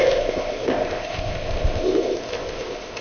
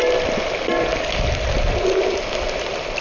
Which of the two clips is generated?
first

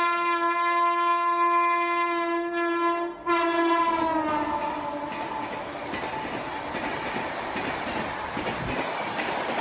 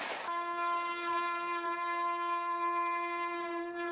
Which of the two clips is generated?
second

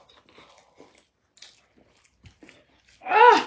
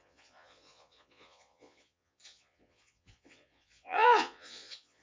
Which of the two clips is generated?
second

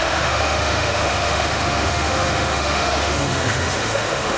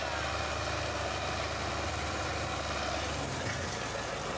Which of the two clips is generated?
first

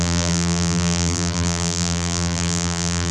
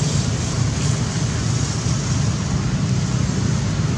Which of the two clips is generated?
first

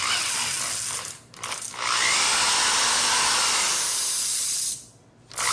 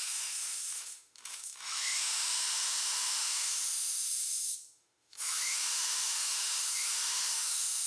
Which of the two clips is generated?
second